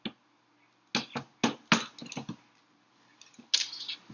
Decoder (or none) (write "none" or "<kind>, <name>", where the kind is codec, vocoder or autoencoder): none